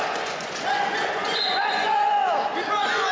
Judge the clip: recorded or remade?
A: remade